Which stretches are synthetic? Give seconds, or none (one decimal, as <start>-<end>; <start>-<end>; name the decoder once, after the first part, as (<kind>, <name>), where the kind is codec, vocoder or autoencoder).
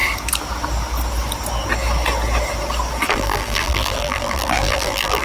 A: 3.1-5.2 (vocoder, BigVGAN v2)